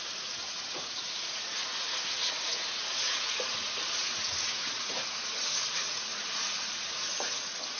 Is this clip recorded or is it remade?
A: remade